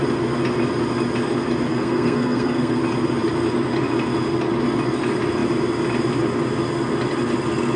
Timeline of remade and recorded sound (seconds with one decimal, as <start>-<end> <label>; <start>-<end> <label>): 0.0-1.7 recorded; 1.7-2.8 remade; 2.8-7.8 recorded